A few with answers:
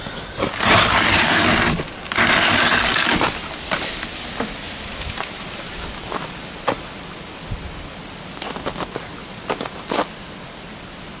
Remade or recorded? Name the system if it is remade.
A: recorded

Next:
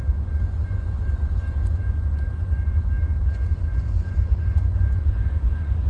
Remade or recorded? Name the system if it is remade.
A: remade, vocoder, Vocos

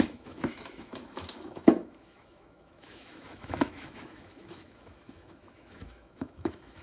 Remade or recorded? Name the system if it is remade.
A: remade, autoencoder, DAC-VAE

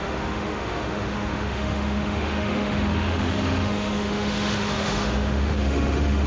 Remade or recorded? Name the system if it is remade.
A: remade, autoencoder, DAC-VAE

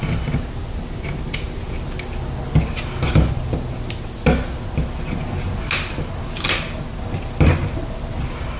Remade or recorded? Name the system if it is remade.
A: recorded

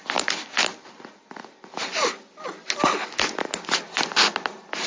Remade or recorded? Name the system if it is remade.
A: recorded